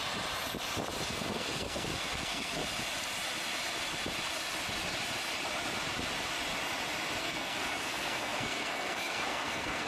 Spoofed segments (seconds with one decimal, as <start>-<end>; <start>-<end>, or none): 1.1-2.6; 7.2-9.9